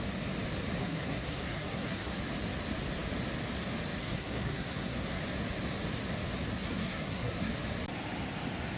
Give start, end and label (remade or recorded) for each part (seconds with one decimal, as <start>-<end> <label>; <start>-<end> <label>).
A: 0.0-0.8 recorded; 0.8-2.2 remade; 2.2-4.0 recorded; 4.0-5.2 remade; 5.2-6.5 recorded; 6.5-7.5 remade; 7.5-8.8 recorded